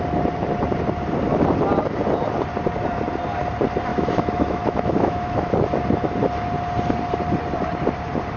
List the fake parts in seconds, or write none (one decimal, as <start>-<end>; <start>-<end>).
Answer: 3.9-5.5